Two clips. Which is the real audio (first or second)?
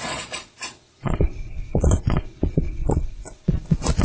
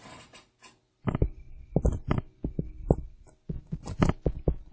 second